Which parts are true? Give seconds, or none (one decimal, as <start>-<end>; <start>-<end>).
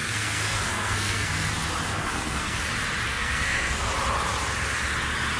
1.5-1.9; 2.6-3.1; 3.9-5.4